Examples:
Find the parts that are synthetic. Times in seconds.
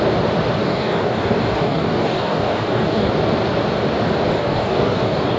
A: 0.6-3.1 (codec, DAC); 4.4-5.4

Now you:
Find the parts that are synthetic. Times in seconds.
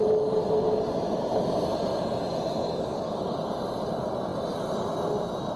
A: 2.6-3.2 (codec, DAC)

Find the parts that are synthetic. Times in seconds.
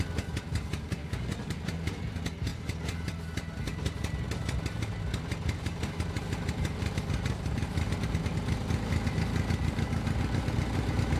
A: 1.0-1.6 (codec, DAC)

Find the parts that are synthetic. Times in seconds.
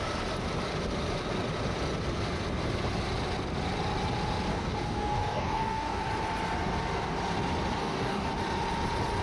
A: 4.5-6.0 (codec, DAC); 7.8-8.3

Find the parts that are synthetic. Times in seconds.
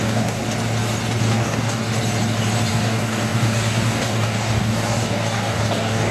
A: 0.0-0.4 (codec, DAC); 1.2-1.8; 2.7-6.1